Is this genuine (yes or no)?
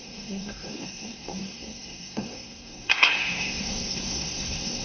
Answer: no